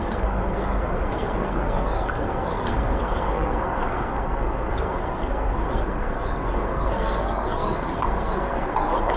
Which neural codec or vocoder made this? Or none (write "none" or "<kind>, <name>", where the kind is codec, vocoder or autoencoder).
codec, SNAC